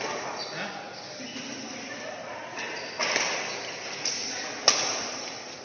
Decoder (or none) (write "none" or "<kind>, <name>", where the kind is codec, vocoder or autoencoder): none